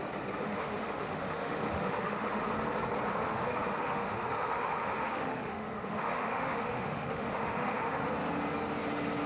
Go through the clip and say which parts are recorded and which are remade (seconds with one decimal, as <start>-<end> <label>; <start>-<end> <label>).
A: 0.0-0.4 recorded; 0.4-2.5 remade; 2.5-3.1 recorded; 3.1-8.0 remade; 8.0-9.3 recorded